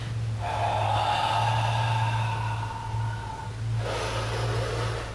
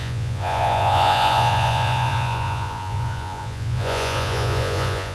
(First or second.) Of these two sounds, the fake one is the second